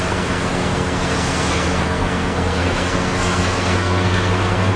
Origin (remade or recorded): remade